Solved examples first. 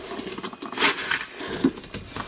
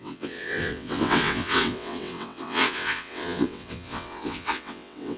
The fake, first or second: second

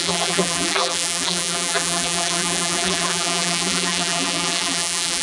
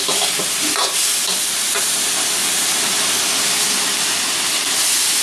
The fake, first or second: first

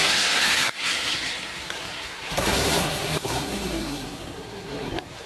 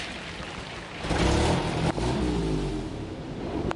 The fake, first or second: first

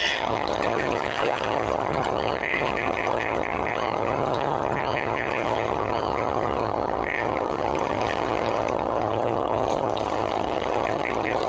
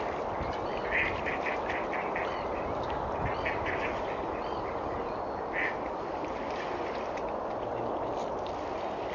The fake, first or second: first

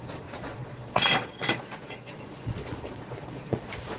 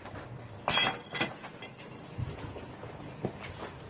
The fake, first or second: first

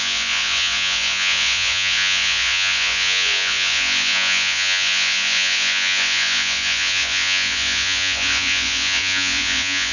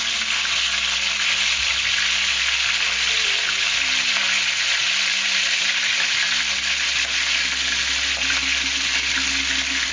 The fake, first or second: first